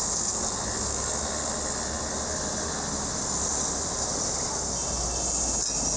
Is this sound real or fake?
real